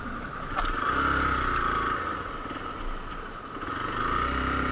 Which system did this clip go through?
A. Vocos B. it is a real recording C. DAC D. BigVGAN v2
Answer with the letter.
B